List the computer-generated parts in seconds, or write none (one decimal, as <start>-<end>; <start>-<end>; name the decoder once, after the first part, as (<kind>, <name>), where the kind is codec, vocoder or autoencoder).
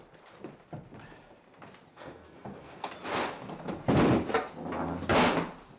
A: 1.9-2.9 (codec, SNAC)